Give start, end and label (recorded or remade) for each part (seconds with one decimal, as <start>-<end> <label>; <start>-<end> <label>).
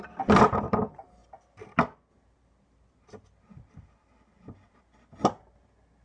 0.0-6.0 recorded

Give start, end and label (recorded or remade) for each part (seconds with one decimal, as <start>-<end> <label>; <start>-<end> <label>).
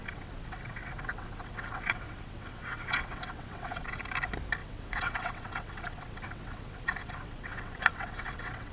0.0-4.0 remade; 4.0-4.6 recorded; 4.6-8.7 remade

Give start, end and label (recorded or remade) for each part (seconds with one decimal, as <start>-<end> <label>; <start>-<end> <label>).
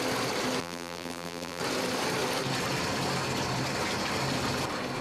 0.0-0.6 recorded; 0.6-1.6 remade; 1.6-5.0 recorded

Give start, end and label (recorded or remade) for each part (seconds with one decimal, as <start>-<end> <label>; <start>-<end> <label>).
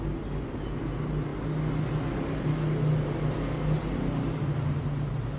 0.0-5.4 recorded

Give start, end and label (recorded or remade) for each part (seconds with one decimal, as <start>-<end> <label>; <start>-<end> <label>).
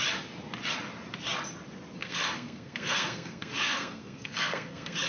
0.0-2.0 recorded; 2.0-5.1 remade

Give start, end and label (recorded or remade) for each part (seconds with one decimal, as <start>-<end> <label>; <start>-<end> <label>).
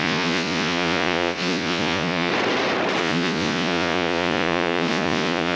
0.0-2.3 remade; 2.3-3.0 recorded; 3.0-5.6 remade